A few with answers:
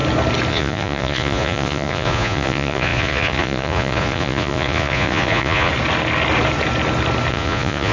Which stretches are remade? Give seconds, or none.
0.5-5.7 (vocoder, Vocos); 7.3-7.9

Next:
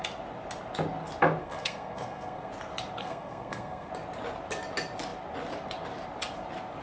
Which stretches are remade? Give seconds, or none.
1.4-2.5 (codec, SNAC); 3.0-3.9